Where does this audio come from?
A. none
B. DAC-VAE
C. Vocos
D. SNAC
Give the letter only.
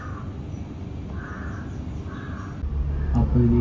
A